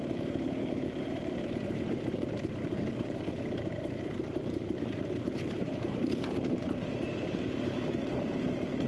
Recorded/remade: remade